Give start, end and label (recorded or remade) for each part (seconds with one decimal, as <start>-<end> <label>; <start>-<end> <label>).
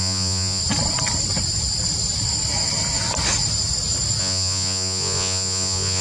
0.0-0.6 remade; 0.6-4.2 recorded; 4.2-6.0 remade